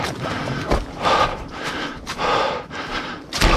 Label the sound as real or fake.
real